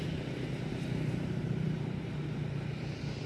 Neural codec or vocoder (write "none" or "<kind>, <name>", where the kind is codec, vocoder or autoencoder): vocoder, BigVGAN v2